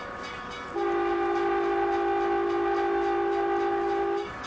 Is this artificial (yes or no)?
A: no